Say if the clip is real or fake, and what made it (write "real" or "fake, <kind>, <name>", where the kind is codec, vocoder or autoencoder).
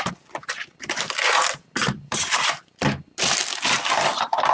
real